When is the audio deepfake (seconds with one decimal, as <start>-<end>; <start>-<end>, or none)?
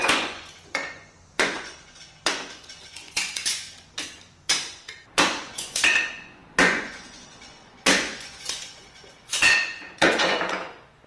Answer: 0.0-11.1